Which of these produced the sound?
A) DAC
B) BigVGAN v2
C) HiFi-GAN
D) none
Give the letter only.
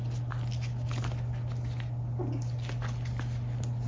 D